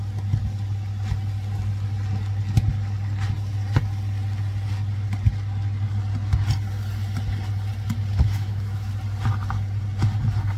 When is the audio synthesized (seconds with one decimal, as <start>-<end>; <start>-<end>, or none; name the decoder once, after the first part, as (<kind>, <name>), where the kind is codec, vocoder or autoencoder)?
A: 8.1-8.9 (autoencoder, DAC-VAE)